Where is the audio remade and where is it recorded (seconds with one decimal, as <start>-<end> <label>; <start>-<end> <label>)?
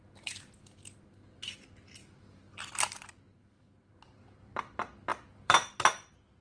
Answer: 0.0-2.0 recorded; 2.0-3.1 remade; 3.1-5.1 recorded; 5.1-5.8 remade; 5.8-6.4 recorded